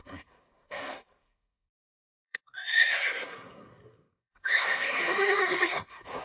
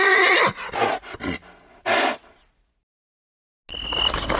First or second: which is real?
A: second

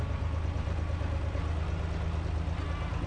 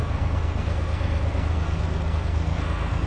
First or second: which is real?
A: first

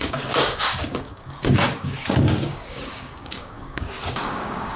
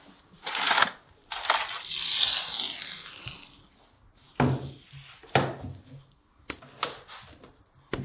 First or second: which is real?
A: second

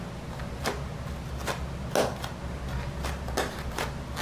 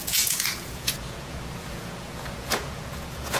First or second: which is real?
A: first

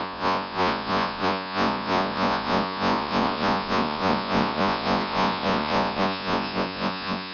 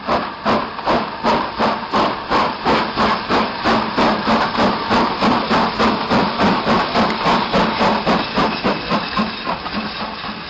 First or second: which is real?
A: second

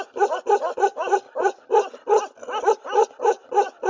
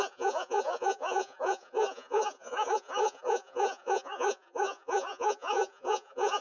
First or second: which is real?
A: first